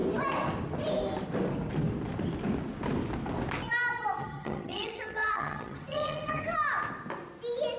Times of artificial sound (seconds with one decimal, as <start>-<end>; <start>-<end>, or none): 4.2-6.4